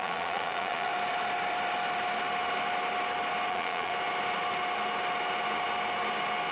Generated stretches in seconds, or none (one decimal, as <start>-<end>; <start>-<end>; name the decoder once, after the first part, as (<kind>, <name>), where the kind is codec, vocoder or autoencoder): 0.0-0.9 (vocoder, Vocos); 3.5-3.9